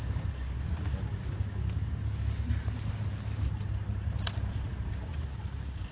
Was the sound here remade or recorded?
recorded